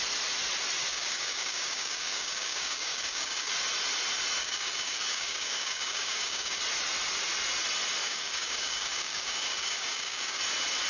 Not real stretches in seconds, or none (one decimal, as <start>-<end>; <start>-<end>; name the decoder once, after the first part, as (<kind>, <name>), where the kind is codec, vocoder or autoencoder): 0.9-3.5 (codec, DAC); 4.4-6.6; 8.0-10.4